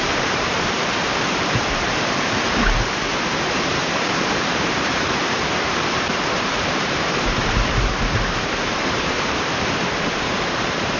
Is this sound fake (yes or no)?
yes